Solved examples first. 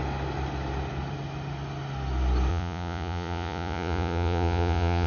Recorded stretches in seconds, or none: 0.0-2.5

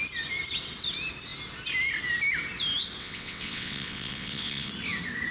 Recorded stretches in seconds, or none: 0.0-3.0; 4.7-5.3

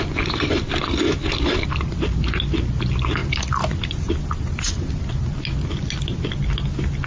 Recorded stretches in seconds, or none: 0.0-7.1

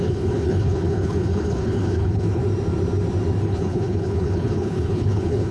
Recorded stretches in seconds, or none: 2.4-3.4

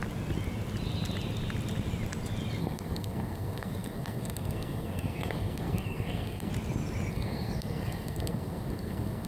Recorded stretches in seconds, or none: 0.0-2.6; 6.5-7.1

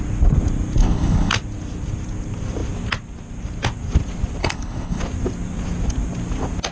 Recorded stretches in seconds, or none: 0.0-0.8; 1.3-4.4; 5.0-6.7

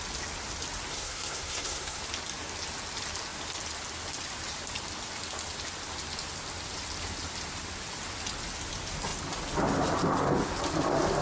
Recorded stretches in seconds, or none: 0.0-0.9; 2.0-11.2